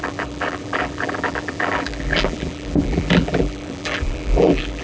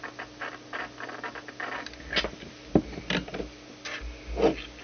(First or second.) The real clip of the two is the second